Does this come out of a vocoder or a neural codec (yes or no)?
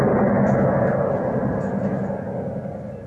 no